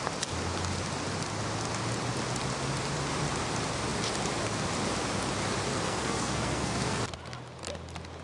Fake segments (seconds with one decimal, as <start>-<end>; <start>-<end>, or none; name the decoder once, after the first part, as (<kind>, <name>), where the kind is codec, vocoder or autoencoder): 5.7-7.0 (codec, SNAC)